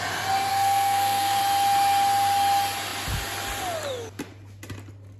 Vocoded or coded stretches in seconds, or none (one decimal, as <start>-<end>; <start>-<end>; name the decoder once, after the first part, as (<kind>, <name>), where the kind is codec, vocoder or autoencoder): 0.5-1.4 (codec, SNAC)